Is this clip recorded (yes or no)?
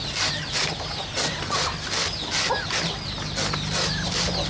yes